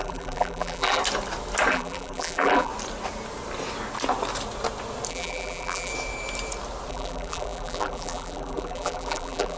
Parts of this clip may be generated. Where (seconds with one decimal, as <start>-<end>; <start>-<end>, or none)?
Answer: 0.0-1.0; 1.7-2.7; 5.1-5.9; 6.9-9.6